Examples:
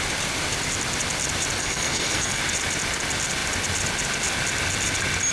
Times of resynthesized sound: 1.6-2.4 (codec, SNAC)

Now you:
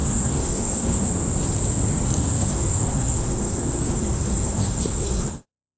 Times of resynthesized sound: 0.0-1.1 (codec, SNAC); 2.2-5.8

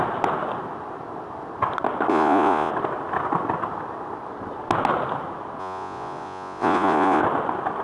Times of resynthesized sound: 2.1-2.7 (vocoder, Vocos); 5.6-7.2

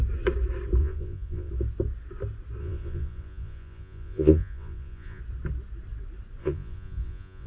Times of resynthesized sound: 0.8-1.5 (vocoder, Vocos); 2.6-5.2; 6.4-7.5